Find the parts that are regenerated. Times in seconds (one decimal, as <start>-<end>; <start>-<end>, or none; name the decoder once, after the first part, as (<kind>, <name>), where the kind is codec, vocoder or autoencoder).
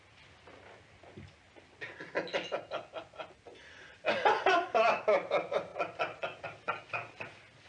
none